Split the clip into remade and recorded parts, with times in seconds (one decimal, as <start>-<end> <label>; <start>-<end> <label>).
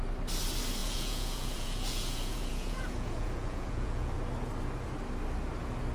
0.0-0.8 recorded; 0.8-4.2 remade; 4.2-5.9 recorded